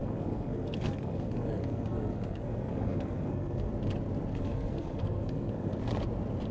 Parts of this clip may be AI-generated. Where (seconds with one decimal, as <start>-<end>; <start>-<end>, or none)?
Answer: 0.0-3.7; 4.3-6.0